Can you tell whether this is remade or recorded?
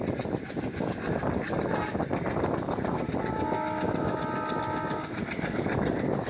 recorded